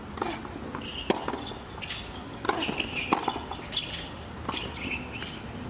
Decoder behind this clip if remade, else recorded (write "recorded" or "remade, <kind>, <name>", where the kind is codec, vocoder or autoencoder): recorded